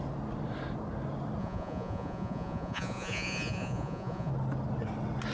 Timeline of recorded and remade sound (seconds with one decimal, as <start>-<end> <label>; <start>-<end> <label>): 0.0-1.4 recorded; 1.4-4.3 remade; 4.3-5.3 recorded